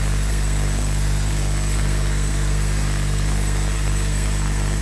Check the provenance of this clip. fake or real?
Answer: fake